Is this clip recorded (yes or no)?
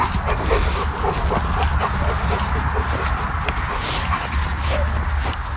yes